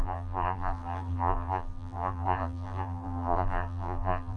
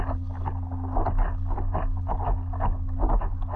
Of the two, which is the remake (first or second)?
first